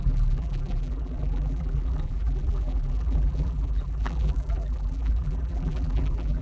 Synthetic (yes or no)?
yes